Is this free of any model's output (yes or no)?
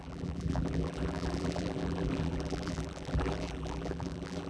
no